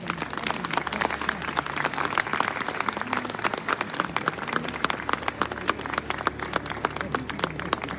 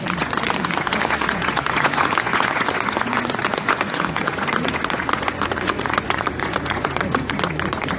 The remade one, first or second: second